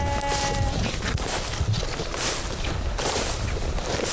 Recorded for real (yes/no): yes